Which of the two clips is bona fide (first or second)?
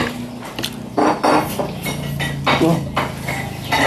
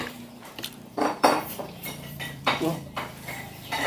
first